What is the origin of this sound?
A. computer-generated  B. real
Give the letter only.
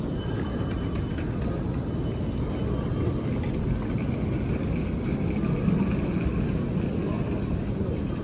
B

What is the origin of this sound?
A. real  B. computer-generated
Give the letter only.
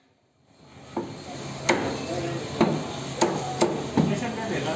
A